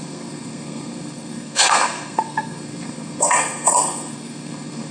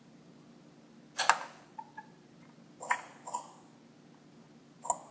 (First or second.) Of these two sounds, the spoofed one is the first